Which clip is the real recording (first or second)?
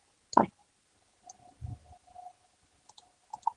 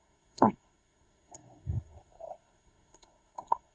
first